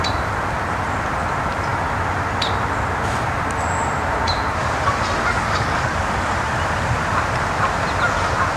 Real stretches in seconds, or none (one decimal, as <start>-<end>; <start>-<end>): 0.0-5.3; 6.3-8.6